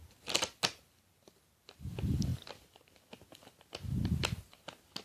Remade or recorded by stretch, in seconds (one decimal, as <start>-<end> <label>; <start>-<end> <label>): 0.0-5.0 recorded